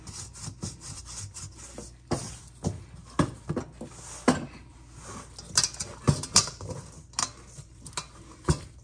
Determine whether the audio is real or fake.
real